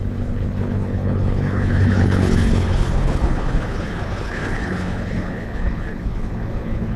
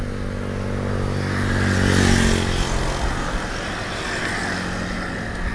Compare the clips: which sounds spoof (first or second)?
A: first